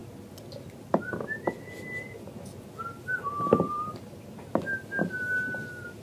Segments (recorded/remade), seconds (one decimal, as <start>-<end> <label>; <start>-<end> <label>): 0.0-6.0 recorded